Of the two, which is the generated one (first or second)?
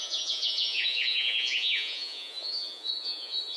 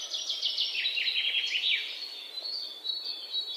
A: first